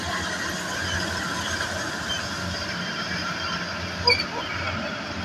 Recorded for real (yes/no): yes